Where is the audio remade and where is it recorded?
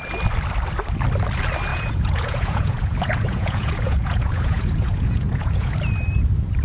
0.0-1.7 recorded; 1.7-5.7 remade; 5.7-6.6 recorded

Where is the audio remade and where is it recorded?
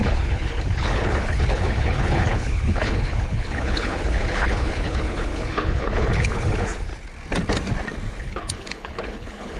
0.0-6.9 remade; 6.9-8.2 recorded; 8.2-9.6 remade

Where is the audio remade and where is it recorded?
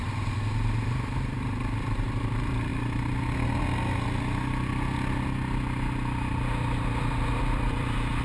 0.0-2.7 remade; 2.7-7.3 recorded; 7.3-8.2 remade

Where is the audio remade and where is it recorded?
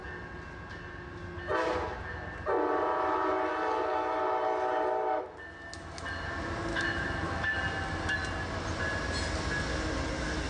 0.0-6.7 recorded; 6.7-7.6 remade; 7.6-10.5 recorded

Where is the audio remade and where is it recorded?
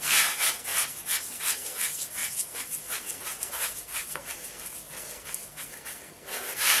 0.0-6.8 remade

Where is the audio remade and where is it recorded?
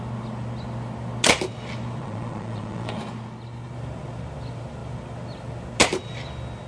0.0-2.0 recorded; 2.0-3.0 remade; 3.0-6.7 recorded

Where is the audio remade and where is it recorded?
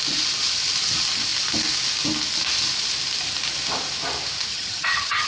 0.0-4.5 recorded; 4.5-5.3 remade